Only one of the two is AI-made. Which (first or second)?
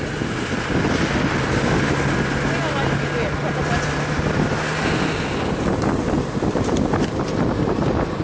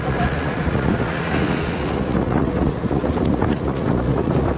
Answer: second